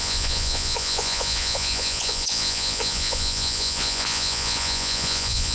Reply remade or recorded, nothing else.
remade